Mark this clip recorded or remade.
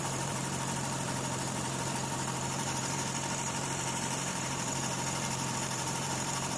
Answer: remade